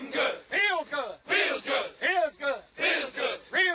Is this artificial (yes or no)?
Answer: no